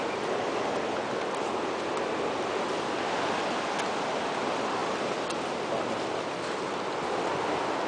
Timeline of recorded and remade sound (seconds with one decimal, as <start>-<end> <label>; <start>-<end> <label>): 0.0-7.9 recorded